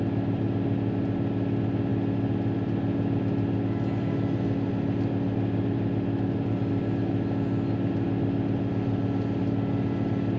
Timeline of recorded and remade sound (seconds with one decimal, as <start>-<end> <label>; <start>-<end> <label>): 0.0-10.4 recorded